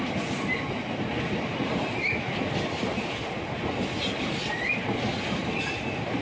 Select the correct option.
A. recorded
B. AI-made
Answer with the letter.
A